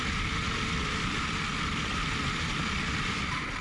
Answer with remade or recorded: remade